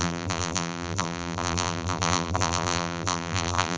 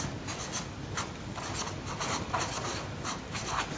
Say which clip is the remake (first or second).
first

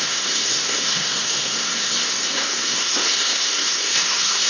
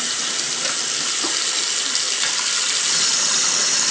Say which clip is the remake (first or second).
first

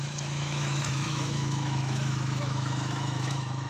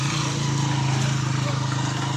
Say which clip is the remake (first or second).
first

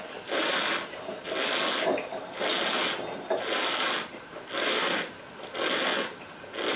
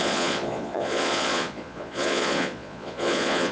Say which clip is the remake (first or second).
second